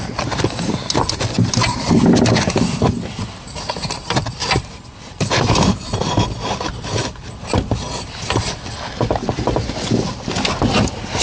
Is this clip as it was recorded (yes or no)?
yes